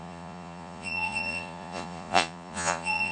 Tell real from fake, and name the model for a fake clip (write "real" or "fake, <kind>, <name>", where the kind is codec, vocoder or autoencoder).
fake, vocoder, Vocos